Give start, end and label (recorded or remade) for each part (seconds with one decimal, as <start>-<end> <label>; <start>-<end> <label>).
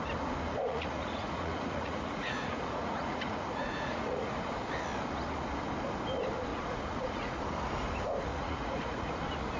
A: 0.0-0.7 recorded; 0.7-4.3 remade; 4.3-6.5 recorded; 6.5-7.4 remade; 7.4-8.3 recorded; 8.3-9.2 remade; 9.2-9.6 recorded